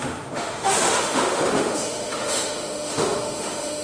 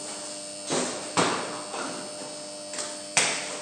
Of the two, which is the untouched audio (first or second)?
second